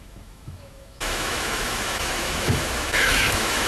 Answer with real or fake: fake